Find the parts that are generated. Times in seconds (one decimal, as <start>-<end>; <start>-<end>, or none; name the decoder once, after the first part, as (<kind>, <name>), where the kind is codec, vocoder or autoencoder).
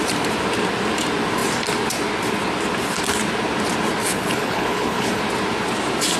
4.0-5.2 (codec, HILCodec)